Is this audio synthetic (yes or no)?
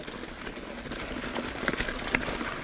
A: no